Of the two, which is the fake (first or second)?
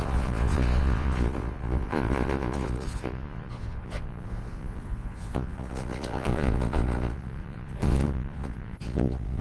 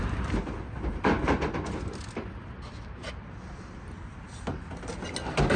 first